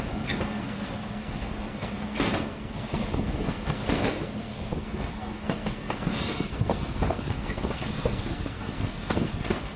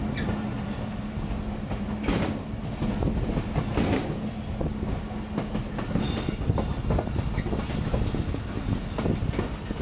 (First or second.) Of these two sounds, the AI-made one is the first